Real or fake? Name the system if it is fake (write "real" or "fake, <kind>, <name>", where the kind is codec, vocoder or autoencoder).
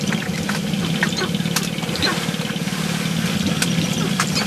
real